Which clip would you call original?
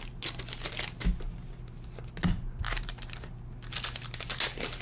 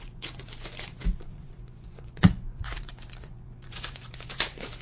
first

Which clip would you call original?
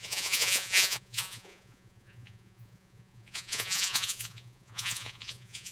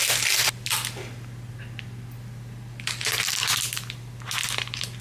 second